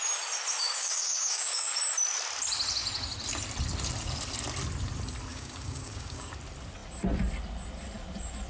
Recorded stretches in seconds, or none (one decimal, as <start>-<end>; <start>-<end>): 0.0-0.6; 1.7-5.3; 6.3-8.5